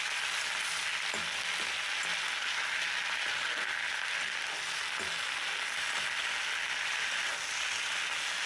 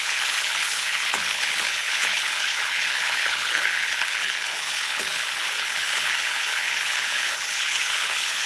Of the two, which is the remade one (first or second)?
second